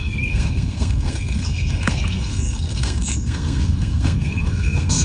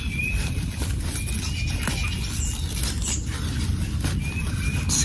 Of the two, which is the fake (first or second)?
first